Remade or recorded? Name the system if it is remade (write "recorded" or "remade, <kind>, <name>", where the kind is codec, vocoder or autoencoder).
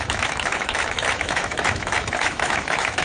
remade, autoencoder, DAC-VAE